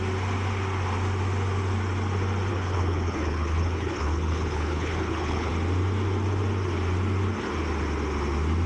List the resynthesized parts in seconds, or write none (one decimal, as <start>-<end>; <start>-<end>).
2.5-5.5